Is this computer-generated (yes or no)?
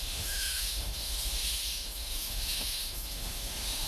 yes